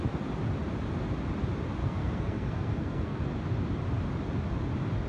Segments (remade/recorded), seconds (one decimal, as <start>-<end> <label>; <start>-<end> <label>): 0.0-1.8 recorded; 1.8-3.2 remade; 3.2-5.1 recorded